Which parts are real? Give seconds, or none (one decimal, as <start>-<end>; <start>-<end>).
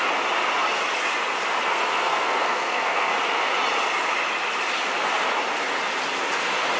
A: 0.0-1.7; 3.1-6.8